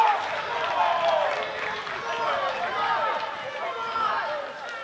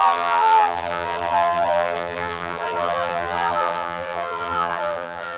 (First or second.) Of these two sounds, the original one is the first